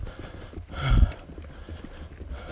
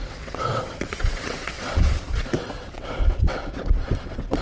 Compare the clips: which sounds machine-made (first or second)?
second